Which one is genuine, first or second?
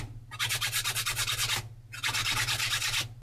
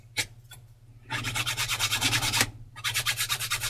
first